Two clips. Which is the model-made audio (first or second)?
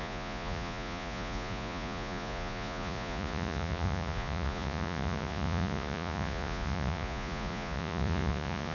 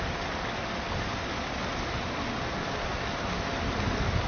first